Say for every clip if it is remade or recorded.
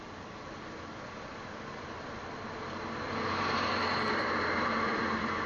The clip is remade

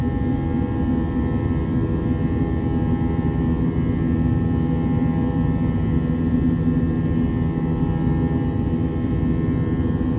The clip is recorded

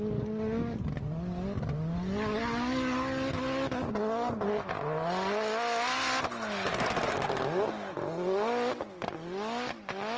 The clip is recorded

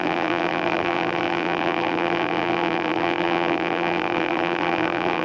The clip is remade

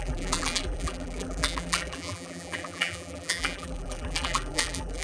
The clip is remade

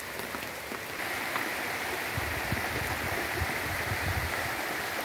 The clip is recorded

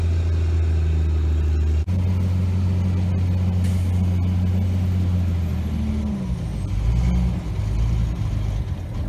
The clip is recorded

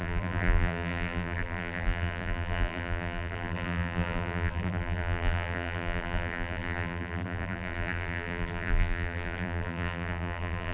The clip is remade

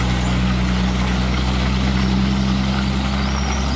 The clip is recorded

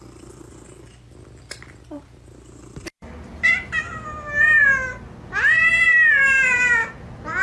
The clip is recorded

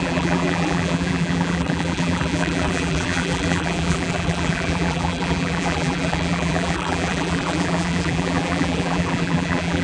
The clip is remade